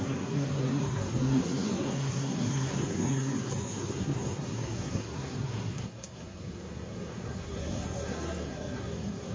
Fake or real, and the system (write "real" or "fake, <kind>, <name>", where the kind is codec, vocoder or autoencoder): fake, codec, SNAC